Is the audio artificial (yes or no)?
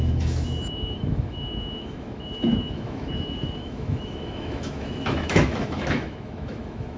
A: yes